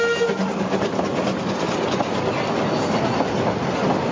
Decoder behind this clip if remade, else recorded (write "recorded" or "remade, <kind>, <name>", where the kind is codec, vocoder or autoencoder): recorded